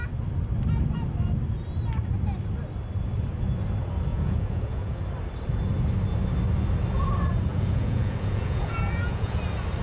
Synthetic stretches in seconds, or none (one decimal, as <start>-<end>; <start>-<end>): 4.1-5.0; 7.5-9.4